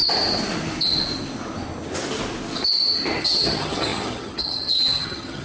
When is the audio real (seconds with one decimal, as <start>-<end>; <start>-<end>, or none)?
0.0-3.2